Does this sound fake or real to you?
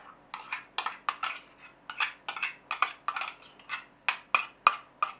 real